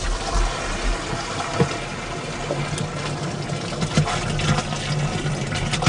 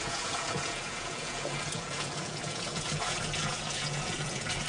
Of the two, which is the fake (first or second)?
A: second